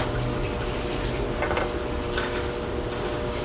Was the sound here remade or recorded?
recorded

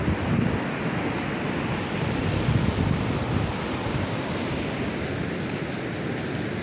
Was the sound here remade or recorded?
recorded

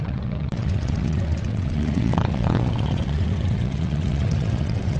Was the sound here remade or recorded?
remade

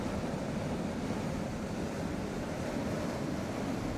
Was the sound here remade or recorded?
recorded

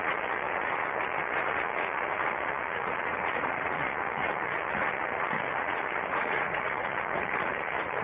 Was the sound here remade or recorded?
remade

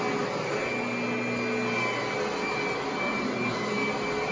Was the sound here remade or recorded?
recorded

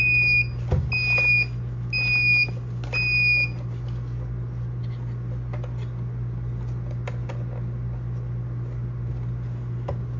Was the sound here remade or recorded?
recorded